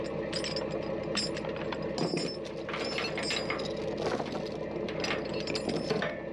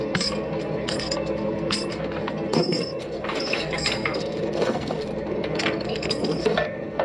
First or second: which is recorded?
first